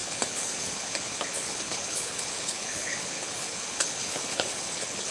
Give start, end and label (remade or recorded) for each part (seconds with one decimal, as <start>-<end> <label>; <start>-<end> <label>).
0.0-5.1 remade